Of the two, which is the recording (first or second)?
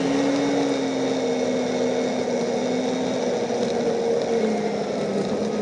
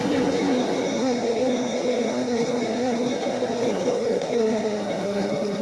first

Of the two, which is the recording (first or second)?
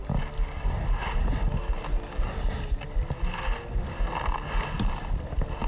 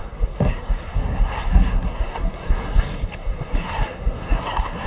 first